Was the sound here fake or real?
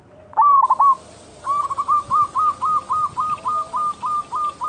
real